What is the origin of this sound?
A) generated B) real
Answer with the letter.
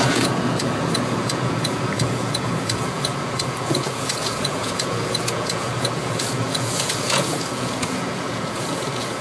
A